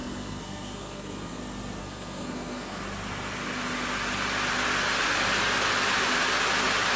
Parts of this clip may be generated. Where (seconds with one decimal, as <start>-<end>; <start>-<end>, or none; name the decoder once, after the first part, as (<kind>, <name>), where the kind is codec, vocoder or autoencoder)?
0.0-1.4 (codec, SNAC); 1.8-2.8